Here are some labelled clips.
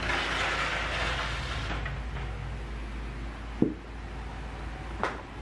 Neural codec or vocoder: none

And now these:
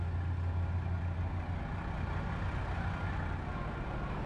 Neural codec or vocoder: none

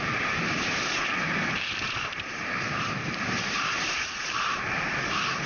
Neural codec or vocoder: vocoder, BigVGAN v2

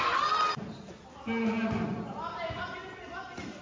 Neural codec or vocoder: none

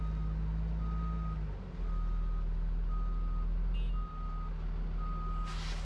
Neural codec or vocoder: none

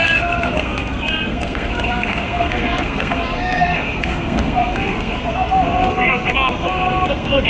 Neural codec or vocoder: codec, SNAC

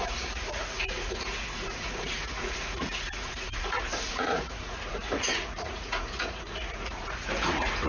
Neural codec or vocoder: vocoder, Vocos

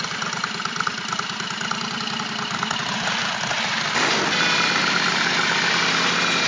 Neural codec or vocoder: none